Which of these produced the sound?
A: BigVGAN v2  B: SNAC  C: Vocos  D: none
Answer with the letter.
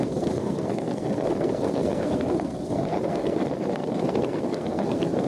B